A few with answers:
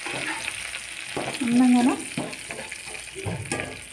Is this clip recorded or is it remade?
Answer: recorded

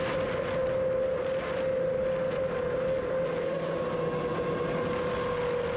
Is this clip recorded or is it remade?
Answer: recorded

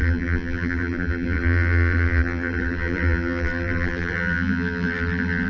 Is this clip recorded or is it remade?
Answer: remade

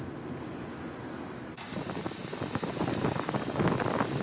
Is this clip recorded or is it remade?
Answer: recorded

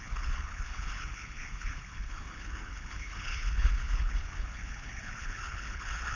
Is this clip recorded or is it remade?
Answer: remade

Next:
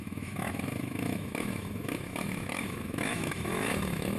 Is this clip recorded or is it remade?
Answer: remade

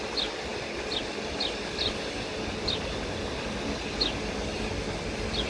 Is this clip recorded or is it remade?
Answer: recorded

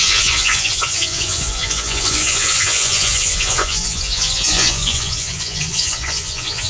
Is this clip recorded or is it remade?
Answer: remade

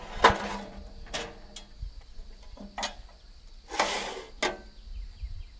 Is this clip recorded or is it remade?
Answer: recorded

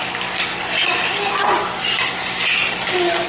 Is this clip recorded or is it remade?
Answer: recorded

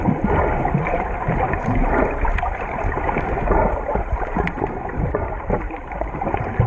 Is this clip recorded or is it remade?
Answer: remade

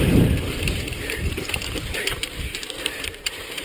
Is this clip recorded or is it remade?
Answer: remade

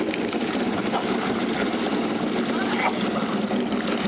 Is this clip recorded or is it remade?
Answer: recorded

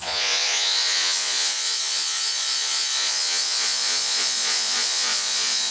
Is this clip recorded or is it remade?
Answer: remade